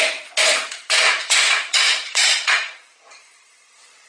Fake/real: fake